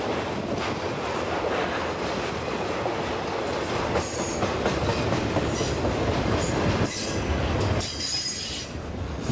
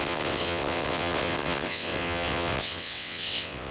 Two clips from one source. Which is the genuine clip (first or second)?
first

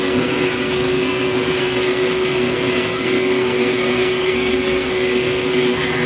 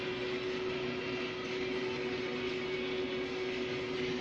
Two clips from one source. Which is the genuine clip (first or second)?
second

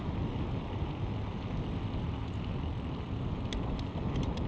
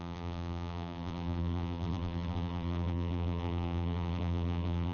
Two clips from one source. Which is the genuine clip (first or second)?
first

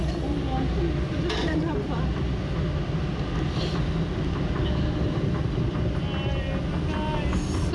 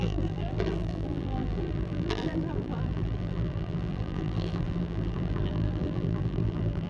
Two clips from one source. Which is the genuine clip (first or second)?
first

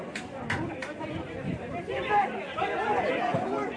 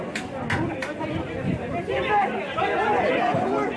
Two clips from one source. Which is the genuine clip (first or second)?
second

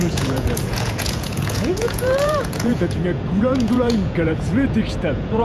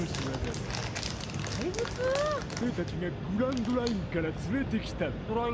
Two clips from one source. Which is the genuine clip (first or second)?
second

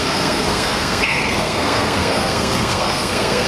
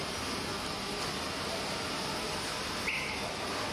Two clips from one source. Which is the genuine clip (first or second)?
second